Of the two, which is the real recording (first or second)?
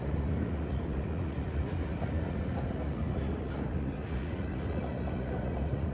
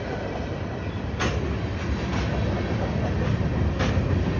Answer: second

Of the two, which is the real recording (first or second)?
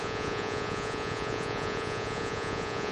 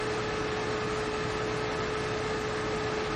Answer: second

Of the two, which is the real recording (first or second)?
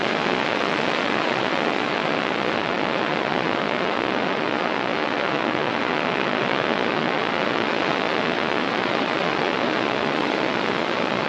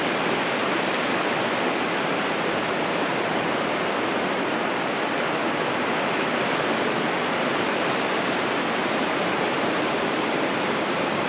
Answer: second